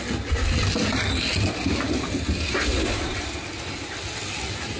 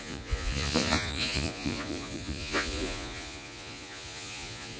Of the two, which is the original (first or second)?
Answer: first